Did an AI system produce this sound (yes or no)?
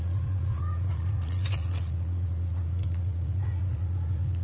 yes